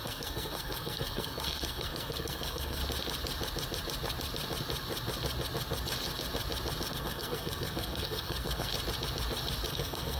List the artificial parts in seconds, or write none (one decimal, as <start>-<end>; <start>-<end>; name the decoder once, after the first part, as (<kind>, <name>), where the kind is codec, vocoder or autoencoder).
0.0-2.8 (codec, SNAC); 6.9-8.7; 9.7-10.2